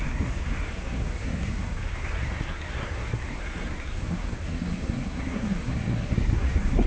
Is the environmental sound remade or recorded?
remade